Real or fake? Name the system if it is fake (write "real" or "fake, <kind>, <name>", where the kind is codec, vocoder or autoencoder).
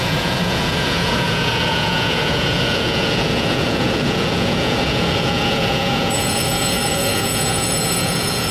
fake, vocoder, Vocos